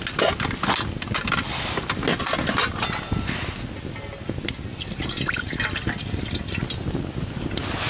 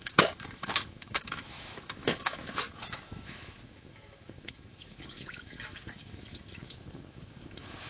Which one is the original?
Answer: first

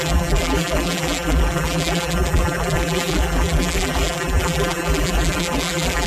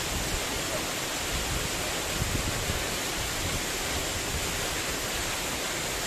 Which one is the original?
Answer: second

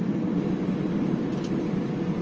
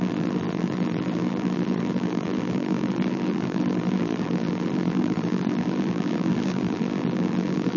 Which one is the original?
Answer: first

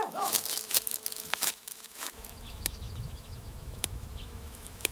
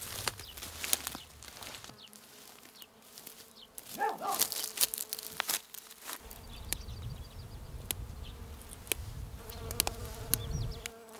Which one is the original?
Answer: second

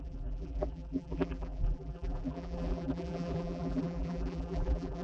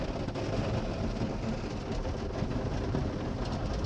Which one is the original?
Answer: second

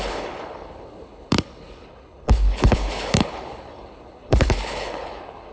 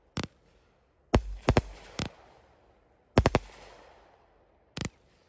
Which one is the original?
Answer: second